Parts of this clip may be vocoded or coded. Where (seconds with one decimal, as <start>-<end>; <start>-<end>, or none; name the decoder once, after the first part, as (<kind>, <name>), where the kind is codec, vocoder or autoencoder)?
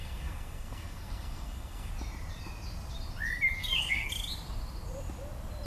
0.0-1.9 (codec, SNAC); 3.6-4.1